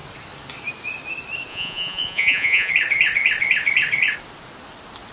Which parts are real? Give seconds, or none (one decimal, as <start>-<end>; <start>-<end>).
0.0-1.5; 2.7-5.1